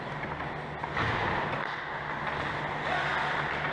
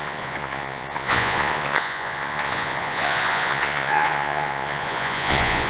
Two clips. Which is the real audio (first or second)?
first